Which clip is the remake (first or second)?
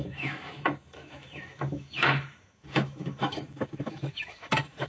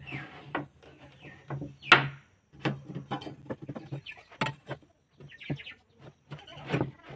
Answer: first